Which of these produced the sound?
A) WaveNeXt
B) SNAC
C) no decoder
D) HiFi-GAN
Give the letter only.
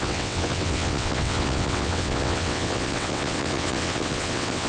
A